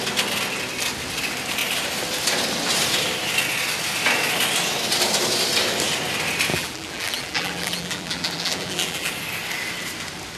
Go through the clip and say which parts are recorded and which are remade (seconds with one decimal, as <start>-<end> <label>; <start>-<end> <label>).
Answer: 0.0-6.5 recorded; 6.5-9.1 remade; 9.1-10.4 recorded